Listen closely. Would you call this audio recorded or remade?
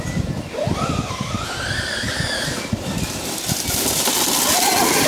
recorded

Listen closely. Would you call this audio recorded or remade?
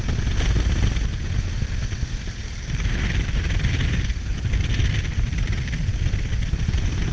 recorded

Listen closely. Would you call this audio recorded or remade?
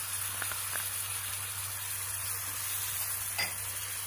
recorded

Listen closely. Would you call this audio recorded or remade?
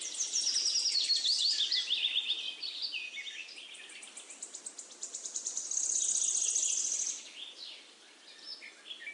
recorded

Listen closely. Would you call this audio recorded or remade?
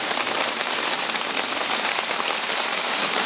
remade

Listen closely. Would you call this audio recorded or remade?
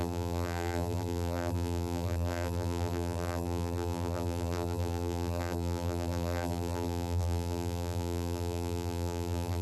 remade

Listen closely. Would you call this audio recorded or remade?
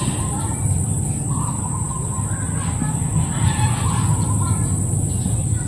remade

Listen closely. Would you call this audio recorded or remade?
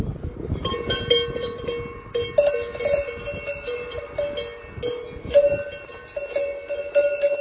recorded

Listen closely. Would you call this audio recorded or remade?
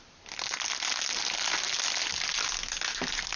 recorded